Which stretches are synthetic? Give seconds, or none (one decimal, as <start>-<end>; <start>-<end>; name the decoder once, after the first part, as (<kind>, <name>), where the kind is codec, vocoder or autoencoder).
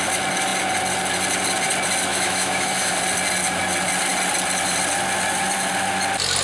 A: 2.1-3.0 (autoencoder, DAC-VAE)